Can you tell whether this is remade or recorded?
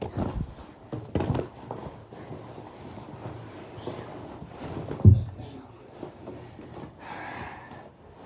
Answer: recorded